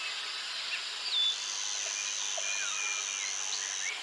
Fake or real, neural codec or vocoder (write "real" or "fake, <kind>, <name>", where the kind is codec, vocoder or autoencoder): real